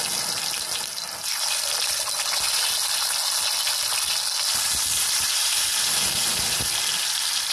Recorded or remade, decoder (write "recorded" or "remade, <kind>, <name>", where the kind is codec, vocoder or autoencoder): recorded